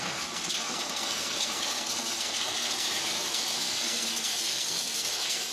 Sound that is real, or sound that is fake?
fake